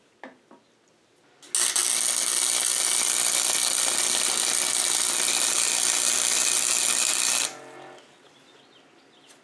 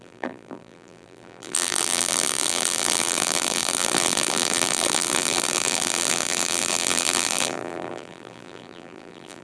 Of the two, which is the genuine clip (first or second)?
first